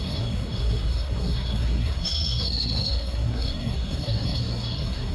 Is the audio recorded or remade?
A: remade